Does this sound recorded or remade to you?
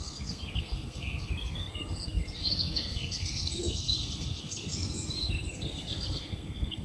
remade